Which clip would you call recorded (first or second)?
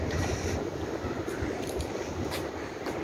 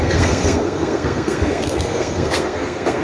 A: first